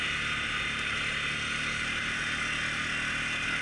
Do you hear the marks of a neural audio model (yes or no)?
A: no